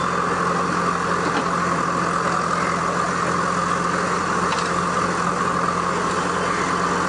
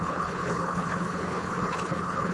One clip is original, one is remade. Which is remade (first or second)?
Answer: second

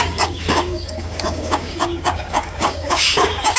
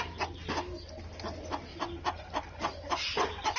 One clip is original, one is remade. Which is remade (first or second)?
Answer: first